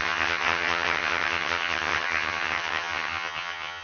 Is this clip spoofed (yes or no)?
yes